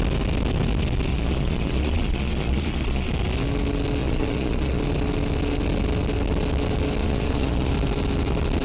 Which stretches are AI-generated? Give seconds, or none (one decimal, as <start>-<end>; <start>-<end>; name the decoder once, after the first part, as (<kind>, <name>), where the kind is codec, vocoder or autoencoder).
1.1-3.1 (vocoder, Vocos); 4.0-4.8; 7.0-7.7